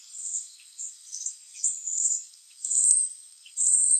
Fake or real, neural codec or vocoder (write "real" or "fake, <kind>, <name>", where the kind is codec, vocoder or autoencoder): fake, codec, SNAC